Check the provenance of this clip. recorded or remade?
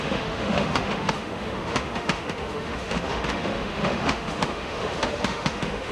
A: remade